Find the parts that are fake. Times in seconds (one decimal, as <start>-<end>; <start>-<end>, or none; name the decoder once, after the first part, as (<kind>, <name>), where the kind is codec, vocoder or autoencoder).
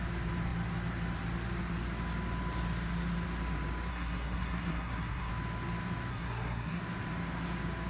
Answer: 3.9-5.3 (codec, SNAC); 6.1-6.8